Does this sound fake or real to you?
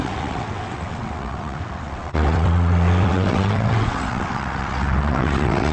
fake